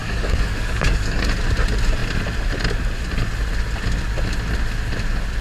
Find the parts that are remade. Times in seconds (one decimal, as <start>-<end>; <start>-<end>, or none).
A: 0.0-1.3